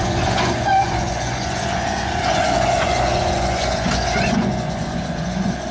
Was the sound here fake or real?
fake